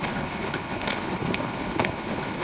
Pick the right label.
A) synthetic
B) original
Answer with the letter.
A